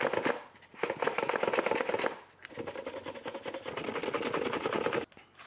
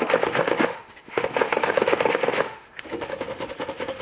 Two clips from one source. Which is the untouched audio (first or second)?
first